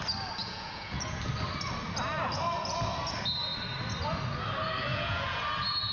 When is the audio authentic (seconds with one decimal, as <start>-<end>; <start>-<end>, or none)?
0.0-0.4; 1.2-4.9; 5.4-5.9